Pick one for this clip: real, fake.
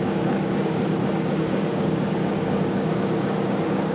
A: fake